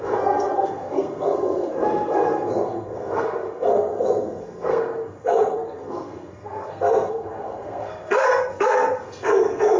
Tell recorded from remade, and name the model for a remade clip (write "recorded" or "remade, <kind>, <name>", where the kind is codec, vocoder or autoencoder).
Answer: remade, codec, SNAC